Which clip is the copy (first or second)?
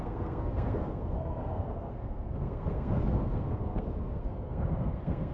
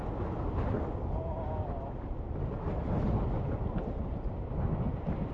first